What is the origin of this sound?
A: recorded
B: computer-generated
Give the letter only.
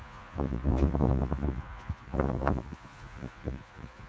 B